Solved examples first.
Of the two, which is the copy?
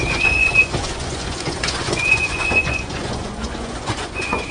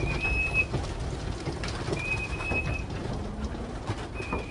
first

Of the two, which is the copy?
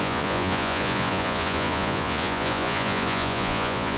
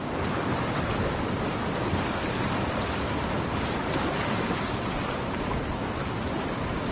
first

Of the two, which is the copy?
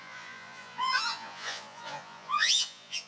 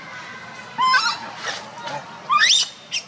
first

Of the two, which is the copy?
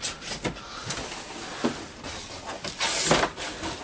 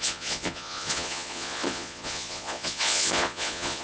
second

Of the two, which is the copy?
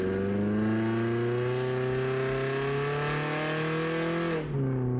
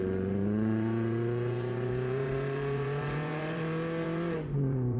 second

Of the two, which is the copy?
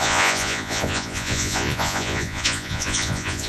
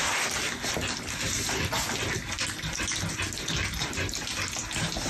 first